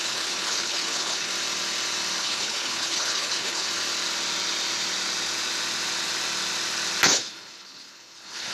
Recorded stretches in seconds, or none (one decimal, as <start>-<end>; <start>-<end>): 1.3-2.2; 3.7-7.0